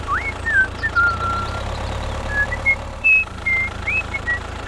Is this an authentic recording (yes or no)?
no